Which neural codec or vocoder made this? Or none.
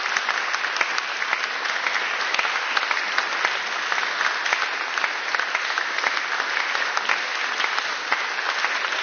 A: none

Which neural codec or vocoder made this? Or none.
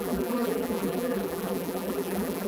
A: vocoder, BigVGAN v2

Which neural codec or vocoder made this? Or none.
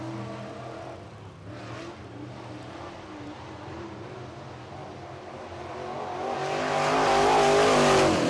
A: none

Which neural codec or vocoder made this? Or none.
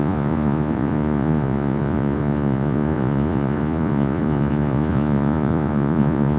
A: vocoder, Vocos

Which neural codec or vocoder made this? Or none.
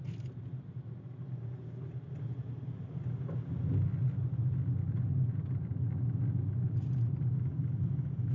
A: none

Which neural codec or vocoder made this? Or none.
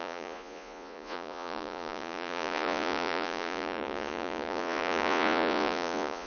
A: vocoder, Vocos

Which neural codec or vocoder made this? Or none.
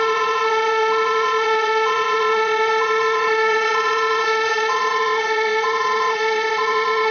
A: vocoder, WaveNeXt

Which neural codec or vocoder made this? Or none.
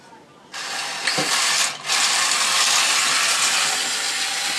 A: none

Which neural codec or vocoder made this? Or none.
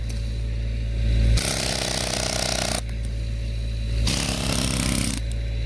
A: none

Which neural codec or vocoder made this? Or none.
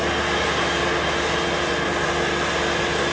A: none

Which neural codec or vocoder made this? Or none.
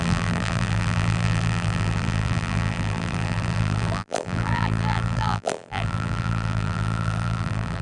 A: vocoder, BigVGAN v2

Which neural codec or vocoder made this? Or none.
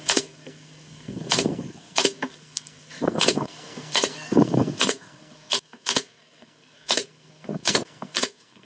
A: codec, SNAC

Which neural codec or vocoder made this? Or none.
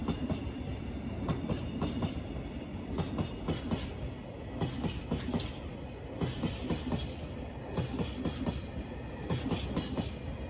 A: none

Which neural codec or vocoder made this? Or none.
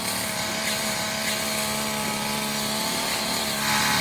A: none